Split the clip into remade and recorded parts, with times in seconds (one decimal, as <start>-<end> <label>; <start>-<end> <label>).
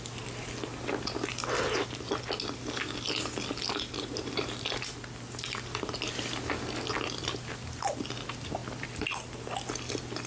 0.0-10.3 recorded